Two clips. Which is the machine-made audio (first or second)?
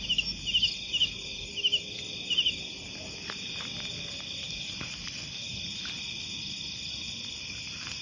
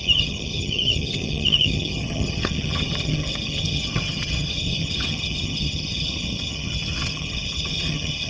second